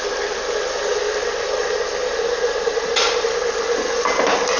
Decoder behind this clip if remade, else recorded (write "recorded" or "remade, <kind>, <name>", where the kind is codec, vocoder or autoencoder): recorded